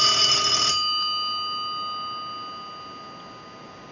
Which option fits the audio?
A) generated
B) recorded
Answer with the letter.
B